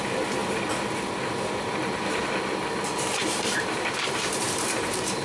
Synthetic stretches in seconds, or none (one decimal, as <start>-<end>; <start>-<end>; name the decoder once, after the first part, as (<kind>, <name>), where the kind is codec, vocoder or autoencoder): 3.2-5.2 (vocoder, BigVGAN v2)